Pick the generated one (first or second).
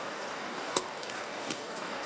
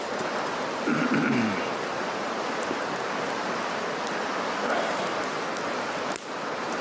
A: first